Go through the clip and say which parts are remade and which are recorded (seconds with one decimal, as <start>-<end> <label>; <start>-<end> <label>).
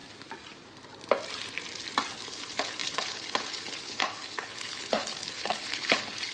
0.0-2.1 recorded; 2.1-6.3 remade